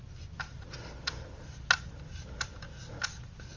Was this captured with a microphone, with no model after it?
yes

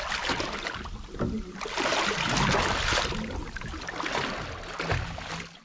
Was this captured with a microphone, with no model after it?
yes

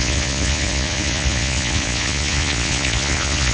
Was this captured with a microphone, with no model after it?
no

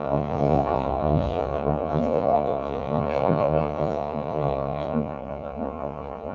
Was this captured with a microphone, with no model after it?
no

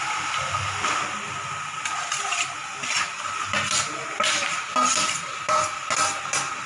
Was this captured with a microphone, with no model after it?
yes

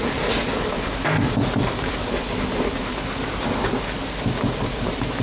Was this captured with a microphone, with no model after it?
yes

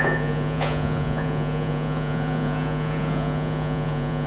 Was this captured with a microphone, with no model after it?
no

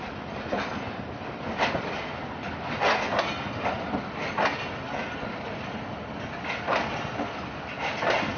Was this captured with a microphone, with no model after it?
yes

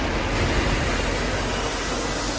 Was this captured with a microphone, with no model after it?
yes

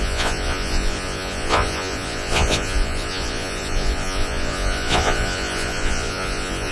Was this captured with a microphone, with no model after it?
no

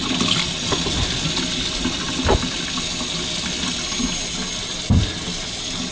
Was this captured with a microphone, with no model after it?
yes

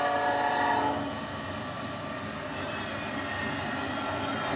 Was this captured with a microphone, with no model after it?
yes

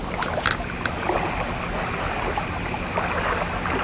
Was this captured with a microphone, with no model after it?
yes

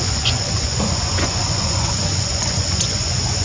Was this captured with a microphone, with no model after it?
no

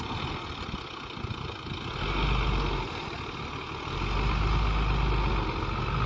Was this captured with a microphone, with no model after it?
yes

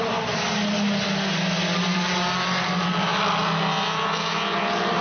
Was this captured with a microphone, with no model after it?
yes